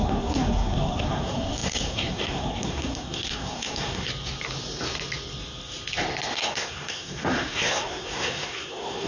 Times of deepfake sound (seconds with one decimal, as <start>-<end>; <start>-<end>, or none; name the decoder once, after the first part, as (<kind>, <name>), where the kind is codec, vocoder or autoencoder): 0.0-4.1 (codec, SNAC); 6.3-9.1